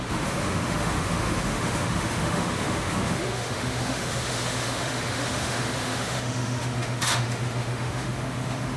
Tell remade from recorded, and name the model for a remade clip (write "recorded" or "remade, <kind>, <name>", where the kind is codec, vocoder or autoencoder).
remade, autoencoder, DAC-VAE